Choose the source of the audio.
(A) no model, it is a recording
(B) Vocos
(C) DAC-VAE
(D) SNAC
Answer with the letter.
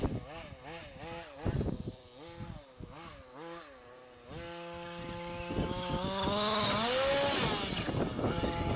A